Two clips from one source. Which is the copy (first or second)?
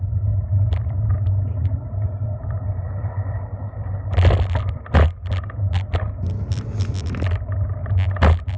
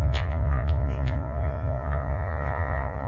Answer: second